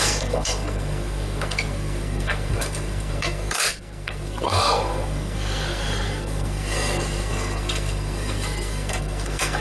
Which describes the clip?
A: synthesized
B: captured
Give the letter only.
A